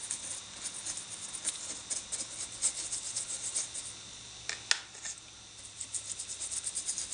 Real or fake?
real